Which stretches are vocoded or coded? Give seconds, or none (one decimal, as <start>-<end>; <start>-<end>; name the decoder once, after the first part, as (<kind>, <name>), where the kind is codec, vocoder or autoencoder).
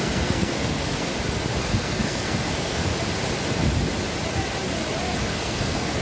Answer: 0.0-1.1 (codec, SNAC); 1.6-2.9; 5.3-6.0